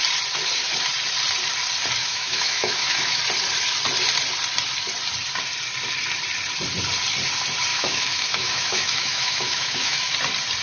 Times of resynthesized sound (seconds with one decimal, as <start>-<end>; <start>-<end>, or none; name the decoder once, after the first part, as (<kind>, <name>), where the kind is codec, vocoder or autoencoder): 2.0-3.2 (autoencoder, DAC-VAE); 7.7-10.1